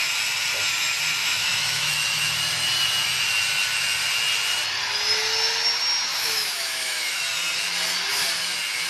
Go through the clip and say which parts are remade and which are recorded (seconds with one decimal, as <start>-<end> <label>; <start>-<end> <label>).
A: 0.0-1.2 recorded; 1.2-1.9 remade; 1.9-6.1 recorded; 6.1-7.2 remade; 7.2-8.9 recorded